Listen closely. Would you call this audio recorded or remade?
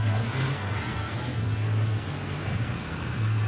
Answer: remade